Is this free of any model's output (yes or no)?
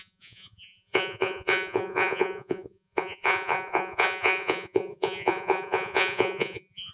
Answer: no